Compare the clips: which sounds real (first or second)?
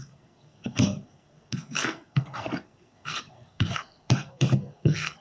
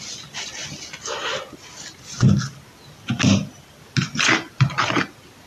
second